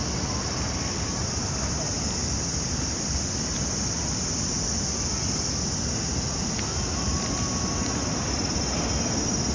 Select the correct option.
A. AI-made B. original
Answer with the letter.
B